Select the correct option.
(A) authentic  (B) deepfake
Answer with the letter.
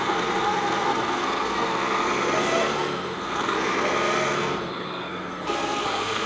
B